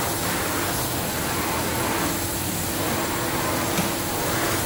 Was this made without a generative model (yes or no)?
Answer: yes